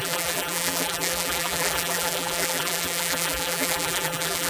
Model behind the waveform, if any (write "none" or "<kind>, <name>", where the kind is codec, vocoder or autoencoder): vocoder, BigVGAN v2